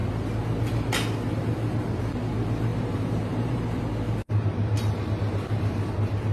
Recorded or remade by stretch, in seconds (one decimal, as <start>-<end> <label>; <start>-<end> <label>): 0.0-2.7 recorded; 2.7-3.6 remade; 3.6-6.3 recorded